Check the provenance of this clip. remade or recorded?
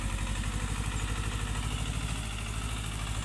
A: recorded